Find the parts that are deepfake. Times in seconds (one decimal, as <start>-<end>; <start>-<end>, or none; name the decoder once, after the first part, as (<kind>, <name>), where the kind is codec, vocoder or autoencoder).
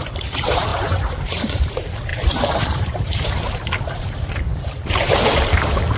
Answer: 0.0-6.0 (vocoder, BigVGAN v2)